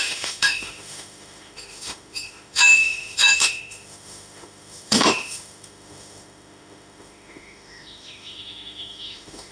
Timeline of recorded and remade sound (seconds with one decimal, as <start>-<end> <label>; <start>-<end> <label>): 0.0-9.5 remade